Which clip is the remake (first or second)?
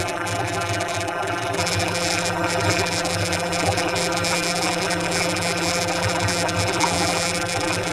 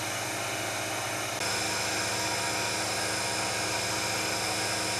first